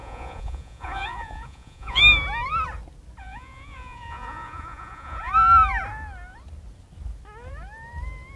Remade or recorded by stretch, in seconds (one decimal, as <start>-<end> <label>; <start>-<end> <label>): 0.0-2.0 remade; 2.0-3.2 recorded; 3.2-5.3 remade; 5.3-8.4 recorded